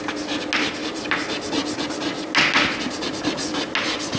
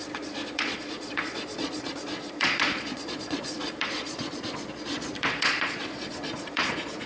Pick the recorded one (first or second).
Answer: first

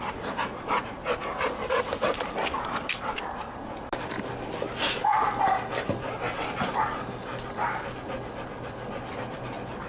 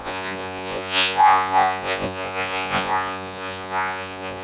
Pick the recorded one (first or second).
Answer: first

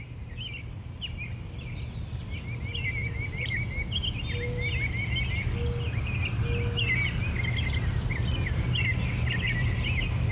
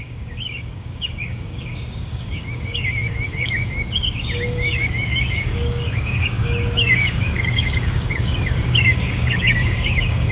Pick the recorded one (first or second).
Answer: first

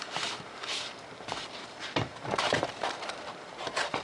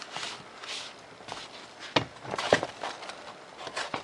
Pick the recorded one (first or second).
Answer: second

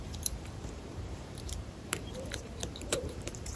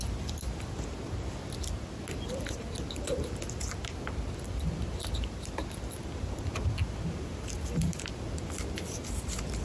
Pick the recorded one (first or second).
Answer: second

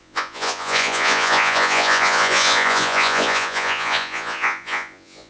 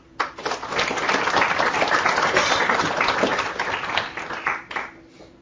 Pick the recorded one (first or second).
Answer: second